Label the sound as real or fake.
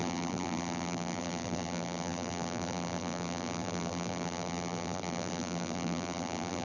fake